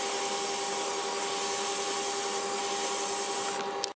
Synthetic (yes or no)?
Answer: no